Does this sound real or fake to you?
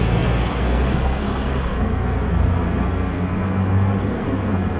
fake